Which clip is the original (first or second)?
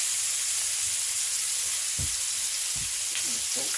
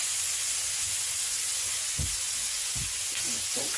first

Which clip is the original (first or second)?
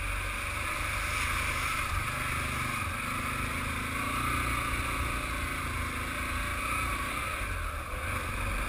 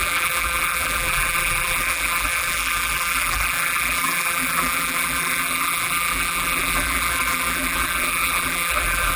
first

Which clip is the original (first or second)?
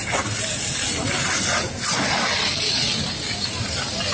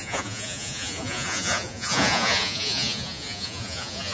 first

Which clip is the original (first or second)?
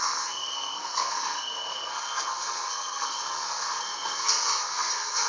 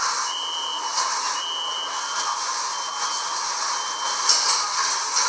second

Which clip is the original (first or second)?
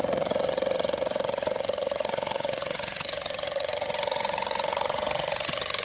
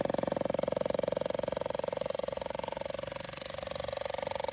second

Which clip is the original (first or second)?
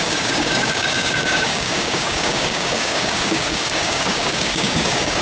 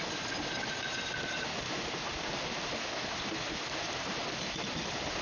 second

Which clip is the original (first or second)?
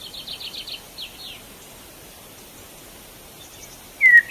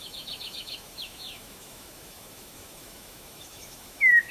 first